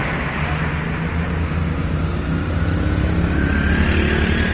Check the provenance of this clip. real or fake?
real